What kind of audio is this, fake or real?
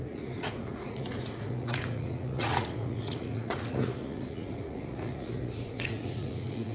fake